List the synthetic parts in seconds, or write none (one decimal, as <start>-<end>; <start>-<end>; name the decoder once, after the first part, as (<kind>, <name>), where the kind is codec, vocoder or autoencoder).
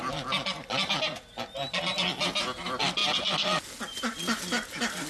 none